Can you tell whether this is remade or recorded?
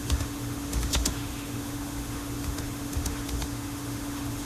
remade